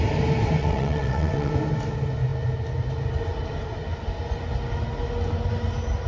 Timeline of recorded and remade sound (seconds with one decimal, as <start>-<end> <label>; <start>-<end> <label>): 0.0-0.6 recorded; 0.6-1.5 remade; 1.5-6.1 recorded